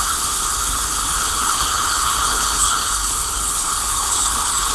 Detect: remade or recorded remade